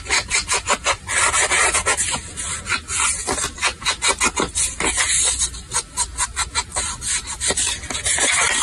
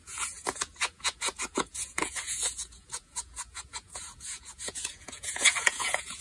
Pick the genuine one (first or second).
first